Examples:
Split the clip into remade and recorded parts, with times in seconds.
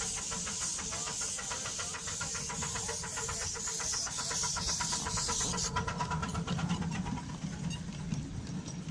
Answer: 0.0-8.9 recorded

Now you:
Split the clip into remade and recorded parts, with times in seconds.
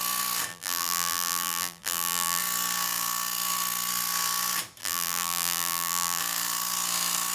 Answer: 0.0-0.5 recorded; 0.5-2.4 remade; 2.4-4.8 recorded; 4.8-6.2 remade; 6.2-7.3 recorded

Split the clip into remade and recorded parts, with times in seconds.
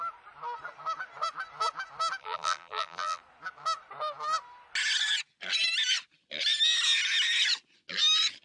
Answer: 0.0-2.2 recorded; 2.2-3.2 remade; 3.2-8.4 recorded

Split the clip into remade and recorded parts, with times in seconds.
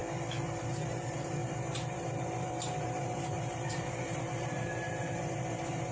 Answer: 0.0-0.7 recorded; 0.7-5.9 remade